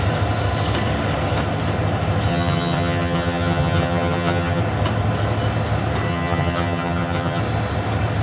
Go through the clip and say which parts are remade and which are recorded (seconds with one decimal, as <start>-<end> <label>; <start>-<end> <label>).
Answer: 0.0-2.3 recorded; 2.3-4.6 remade; 4.6-6.1 recorded; 6.1-7.4 remade; 7.4-8.2 recorded